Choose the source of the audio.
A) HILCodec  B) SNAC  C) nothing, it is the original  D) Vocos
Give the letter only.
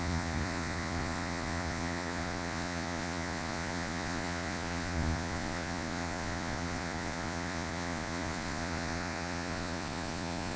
D